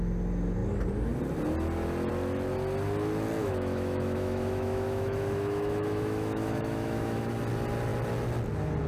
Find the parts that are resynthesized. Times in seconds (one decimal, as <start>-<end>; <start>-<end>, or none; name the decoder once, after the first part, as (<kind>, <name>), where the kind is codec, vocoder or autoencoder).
3.4-7.3 (autoencoder, DAC-VAE)